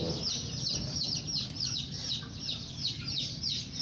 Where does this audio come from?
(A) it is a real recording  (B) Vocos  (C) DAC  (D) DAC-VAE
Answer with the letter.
A